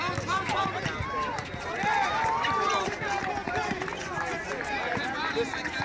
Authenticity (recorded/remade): recorded